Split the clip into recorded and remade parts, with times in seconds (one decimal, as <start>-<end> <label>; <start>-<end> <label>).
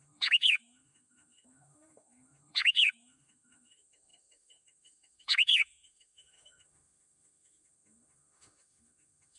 0.0-9.4 remade